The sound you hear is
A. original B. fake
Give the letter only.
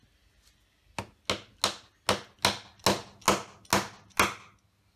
A